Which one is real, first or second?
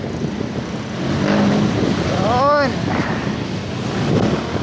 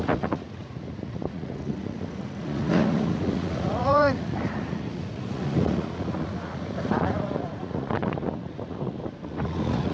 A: first